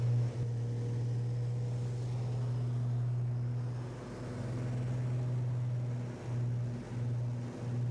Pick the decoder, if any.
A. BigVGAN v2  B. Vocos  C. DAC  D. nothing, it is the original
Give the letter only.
D